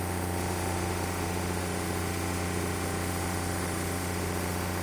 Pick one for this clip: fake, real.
fake